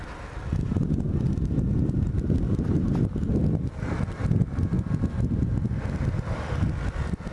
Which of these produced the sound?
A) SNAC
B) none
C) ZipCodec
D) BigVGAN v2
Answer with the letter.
B